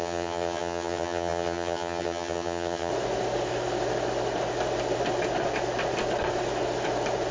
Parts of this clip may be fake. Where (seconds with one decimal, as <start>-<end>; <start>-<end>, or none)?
0.0-2.9